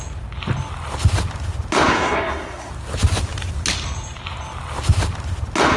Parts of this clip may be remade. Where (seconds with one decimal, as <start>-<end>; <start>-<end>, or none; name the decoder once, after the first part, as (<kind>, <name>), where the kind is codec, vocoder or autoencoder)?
1.9-2.7 (codec, SNAC)